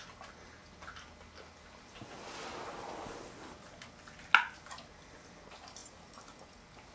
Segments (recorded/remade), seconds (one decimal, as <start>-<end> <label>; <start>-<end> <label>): 0.0-6.9 recorded